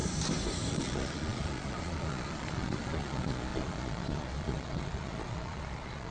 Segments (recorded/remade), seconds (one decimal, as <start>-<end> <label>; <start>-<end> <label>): 0.0-0.7 recorded; 0.7-6.1 remade